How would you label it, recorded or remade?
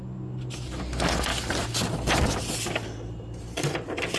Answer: recorded